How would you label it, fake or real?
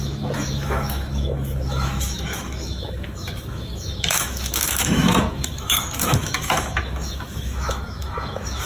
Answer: fake